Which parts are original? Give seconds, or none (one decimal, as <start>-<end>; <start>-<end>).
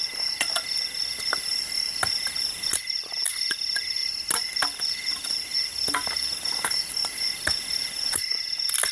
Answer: 0.0-8.9